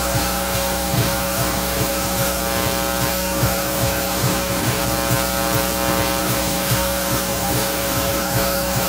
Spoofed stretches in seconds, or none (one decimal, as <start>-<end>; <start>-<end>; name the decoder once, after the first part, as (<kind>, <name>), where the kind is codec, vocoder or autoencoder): 0.0-2.4 (codec, DAC); 3.1-4.8; 6.2-8.9